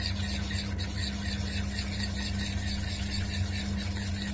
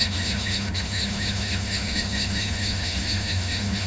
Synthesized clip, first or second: second